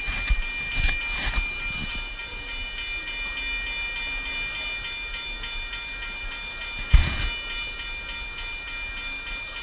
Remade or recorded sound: recorded